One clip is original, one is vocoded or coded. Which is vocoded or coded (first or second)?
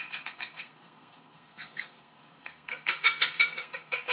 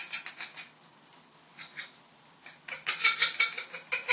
first